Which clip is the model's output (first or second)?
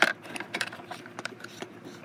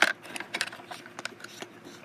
first